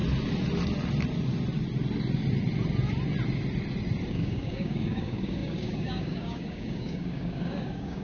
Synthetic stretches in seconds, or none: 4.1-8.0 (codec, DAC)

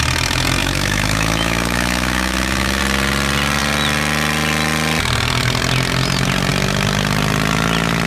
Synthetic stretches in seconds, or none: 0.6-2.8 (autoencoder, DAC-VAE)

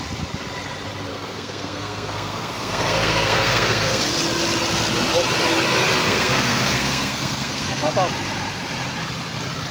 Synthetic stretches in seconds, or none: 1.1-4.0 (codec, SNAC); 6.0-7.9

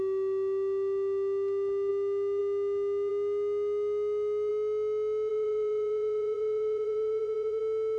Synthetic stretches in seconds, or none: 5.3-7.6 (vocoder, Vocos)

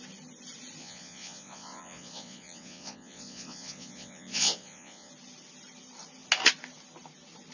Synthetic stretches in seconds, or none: 0.8-5.1 (vocoder, Vocos)